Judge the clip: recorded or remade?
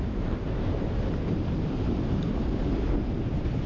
remade